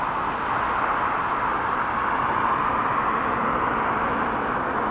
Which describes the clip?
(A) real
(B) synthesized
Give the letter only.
A